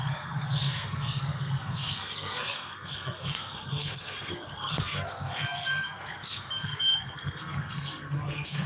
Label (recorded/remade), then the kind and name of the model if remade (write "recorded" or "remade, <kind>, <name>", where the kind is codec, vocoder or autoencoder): remade, codec, SNAC